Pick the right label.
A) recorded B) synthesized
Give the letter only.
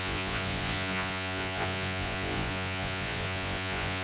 B